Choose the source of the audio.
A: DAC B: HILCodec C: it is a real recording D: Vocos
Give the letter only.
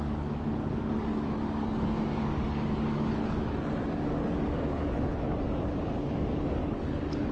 A